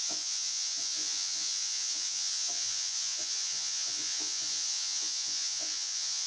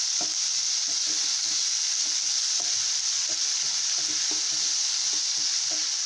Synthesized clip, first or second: first